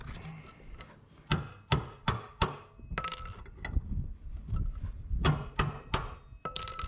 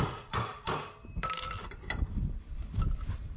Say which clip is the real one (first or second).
first